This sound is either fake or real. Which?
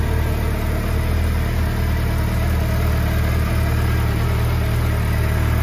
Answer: real